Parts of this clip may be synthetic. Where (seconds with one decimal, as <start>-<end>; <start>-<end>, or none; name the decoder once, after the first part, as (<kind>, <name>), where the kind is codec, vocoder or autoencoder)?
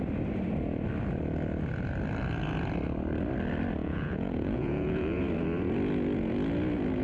3.8-5.2 (vocoder, Vocos)